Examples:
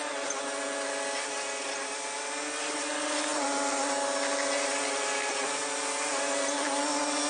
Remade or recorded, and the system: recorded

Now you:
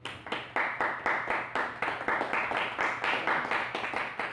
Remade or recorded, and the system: recorded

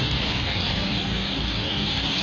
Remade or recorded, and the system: remade, codec, DAC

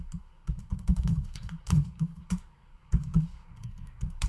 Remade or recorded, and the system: remade, codec, SNAC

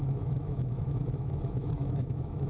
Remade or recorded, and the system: remade, autoencoder, DAC-VAE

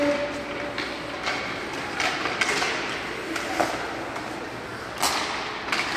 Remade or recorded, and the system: recorded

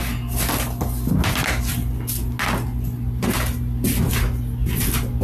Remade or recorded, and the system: recorded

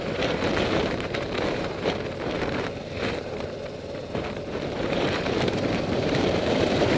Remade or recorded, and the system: remade, vocoder, BigVGAN v2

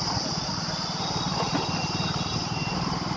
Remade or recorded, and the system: recorded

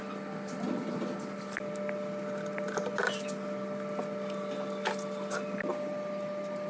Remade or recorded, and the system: recorded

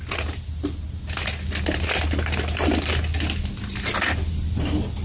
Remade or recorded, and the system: recorded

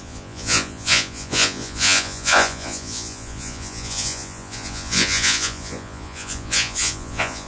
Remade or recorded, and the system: remade, vocoder, Vocos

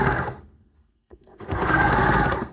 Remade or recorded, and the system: remade, codec, SNAC